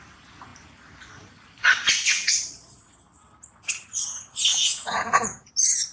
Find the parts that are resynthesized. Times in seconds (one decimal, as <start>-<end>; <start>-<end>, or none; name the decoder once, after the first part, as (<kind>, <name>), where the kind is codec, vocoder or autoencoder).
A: 4.5-5.5 (vocoder, Vocos)